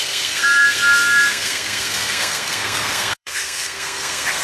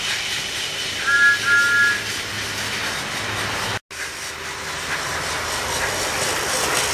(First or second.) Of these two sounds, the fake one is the first